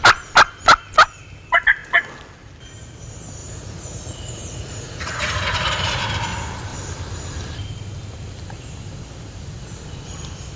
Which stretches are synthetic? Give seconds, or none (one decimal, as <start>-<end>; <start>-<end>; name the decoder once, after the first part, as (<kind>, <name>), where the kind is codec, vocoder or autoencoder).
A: 3.4-6.0 (vocoder, Vocos)